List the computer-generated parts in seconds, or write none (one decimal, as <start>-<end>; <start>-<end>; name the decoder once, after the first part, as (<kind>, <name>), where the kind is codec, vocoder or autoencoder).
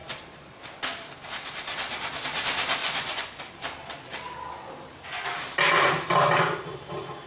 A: 2.8-3.4 (vocoder, Vocos)